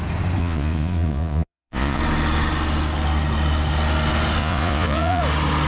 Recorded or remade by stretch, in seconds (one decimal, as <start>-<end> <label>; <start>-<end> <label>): 0.0-0.4 recorded; 0.4-2.0 remade; 2.0-4.4 recorded; 4.4-5.2 remade; 5.2-5.7 recorded